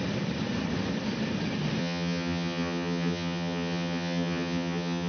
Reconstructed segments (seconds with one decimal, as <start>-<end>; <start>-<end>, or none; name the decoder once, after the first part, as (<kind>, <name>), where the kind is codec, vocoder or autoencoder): 1.8-5.1 (vocoder, HiFi-GAN)